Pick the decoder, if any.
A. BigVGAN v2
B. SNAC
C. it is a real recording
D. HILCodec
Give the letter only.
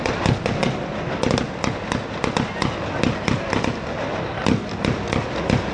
C